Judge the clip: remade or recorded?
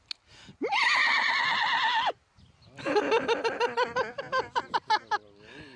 recorded